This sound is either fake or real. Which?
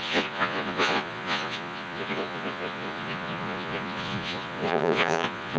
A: fake